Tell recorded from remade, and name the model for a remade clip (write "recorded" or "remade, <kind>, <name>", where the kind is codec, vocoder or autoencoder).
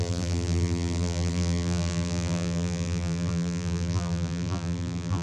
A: remade, vocoder, BigVGAN v2